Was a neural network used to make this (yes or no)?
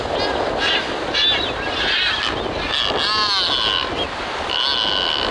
no